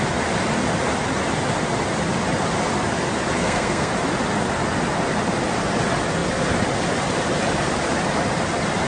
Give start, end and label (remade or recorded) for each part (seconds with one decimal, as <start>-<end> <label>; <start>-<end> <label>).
0.0-3.4 recorded; 3.4-3.9 remade; 3.9-8.9 recorded